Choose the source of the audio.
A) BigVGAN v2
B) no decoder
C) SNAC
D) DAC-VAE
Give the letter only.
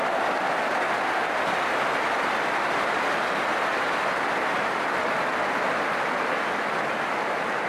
B